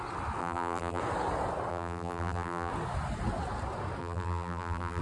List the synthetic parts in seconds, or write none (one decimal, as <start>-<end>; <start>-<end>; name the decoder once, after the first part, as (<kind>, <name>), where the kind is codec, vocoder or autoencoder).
0.4-1.0 (vocoder, BigVGAN v2); 1.7-2.7; 4.0-5.0